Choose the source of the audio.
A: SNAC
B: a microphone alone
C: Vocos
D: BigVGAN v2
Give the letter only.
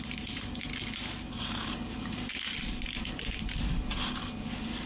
D